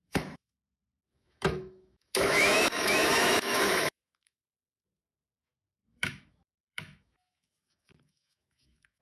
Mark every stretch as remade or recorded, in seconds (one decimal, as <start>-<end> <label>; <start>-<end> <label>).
0.0-9.0 remade